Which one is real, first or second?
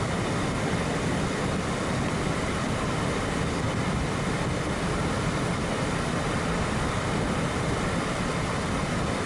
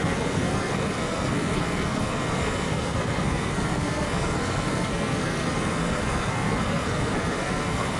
first